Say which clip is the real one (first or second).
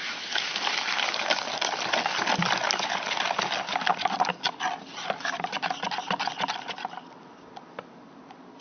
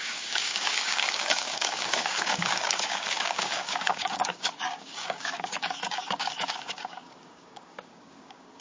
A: first